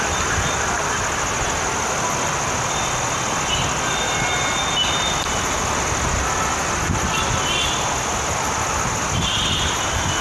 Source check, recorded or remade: recorded